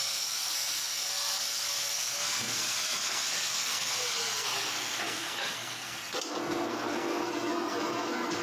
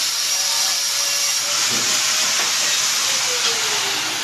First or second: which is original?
second